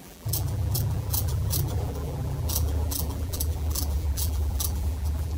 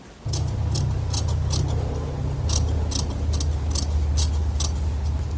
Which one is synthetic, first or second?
first